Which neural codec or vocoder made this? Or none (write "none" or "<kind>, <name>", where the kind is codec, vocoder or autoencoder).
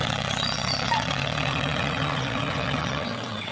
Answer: vocoder, WaveNeXt